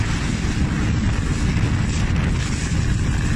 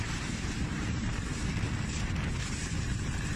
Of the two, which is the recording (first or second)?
first